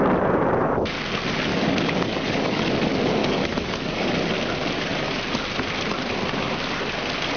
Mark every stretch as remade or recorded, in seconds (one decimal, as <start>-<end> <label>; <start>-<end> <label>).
0.0-1.5 recorded; 1.5-2.6 remade; 2.6-3.2 recorded; 3.2-4.1 remade; 4.1-7.4 recorded